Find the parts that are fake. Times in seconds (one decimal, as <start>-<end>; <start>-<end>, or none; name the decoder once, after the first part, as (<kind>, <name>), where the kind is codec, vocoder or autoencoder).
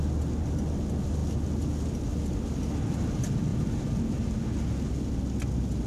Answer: none